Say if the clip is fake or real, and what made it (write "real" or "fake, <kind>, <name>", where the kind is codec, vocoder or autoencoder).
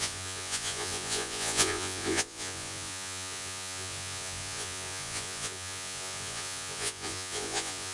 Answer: fake, vocoder, Vocos